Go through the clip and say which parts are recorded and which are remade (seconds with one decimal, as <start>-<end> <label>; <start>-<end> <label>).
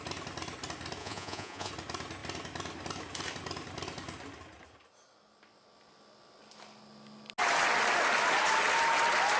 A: 0.0-1.0 recorded; 1.0-1.7 remade; 1.7-9.4 recorded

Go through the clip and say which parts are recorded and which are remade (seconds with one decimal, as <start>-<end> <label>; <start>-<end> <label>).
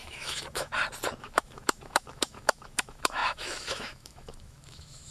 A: 0.0-0.7 remade; 0.7-1.2 recorded; 1.2-5.1 remade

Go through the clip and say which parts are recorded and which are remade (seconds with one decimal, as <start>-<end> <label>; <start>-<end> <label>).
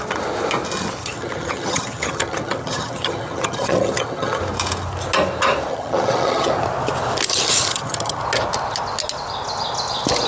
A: 0.0-1.0 recorded; 1.0-4.4 remade; 4.4-5.7 recorded; 5.7-6.5 remade; 6.5-7.7 recorded; 7.7-8.2 remade; 8.2-10.3 recorded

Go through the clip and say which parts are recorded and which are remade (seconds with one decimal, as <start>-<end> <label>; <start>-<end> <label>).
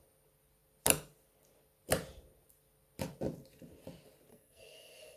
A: 0.0-4.3 recorded; 4.3-5.2 remade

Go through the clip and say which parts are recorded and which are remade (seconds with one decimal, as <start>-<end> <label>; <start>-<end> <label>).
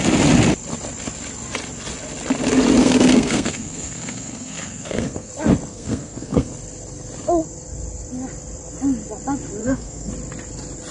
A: 0.0-2.8 recorded; 2.8-5.3 remade; 5.3-5.7 recorded; 5.7-6.5 remade; 6.5-9.6 recorded; 9.6-10.1 remade; 10.1-10.9 recorded